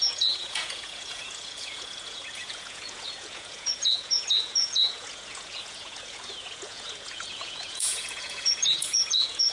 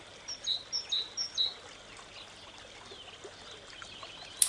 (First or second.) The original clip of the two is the second